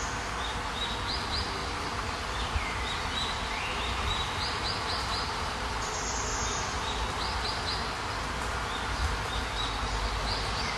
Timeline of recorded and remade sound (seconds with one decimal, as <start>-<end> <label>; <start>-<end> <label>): 0.0-1.6 recorded; 1.6-5.8 remade; 5.8-6.3 recorded; 6.3-7.0 remade; 7.0-10.8 recorded